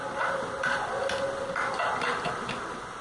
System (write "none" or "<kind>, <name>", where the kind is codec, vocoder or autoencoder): none